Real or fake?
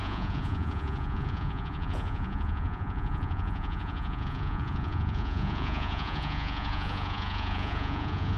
fake